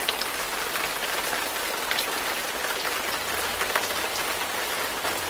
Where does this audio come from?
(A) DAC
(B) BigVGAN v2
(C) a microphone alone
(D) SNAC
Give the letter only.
C